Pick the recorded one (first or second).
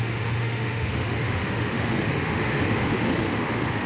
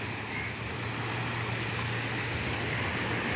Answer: second